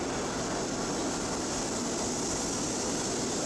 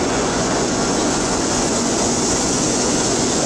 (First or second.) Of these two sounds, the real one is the first